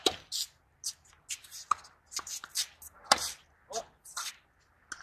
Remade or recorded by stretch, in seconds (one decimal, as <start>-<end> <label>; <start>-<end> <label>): 0.0-5.0 recorded